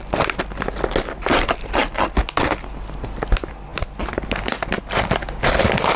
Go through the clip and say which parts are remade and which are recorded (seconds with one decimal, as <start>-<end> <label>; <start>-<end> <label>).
0.0-6.0 recorded